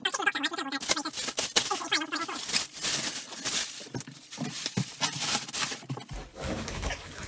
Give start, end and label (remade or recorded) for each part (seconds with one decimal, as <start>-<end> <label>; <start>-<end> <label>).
0.0-6.3 recorded; 6.3-7.3 remade